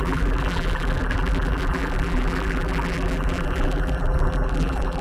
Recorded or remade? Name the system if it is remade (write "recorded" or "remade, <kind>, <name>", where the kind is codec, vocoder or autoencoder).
remade, vocoder, BigVGAN v2